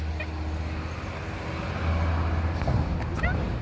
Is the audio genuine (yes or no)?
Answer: yes